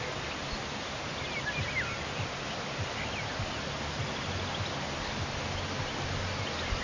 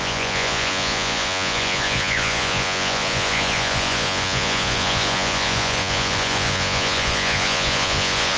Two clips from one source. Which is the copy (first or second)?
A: second